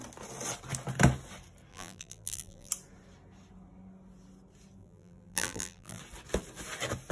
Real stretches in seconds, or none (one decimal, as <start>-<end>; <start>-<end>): 0.0-1.7; 2.7-4.8; 6.0-7.1